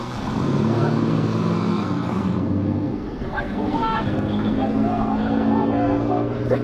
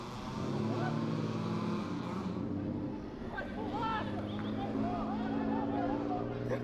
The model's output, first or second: first